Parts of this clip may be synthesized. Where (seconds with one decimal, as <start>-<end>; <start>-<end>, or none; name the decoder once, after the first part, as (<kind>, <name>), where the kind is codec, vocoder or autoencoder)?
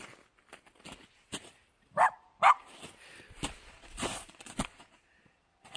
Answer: 3.7-5.8 (vocoder, Vocos)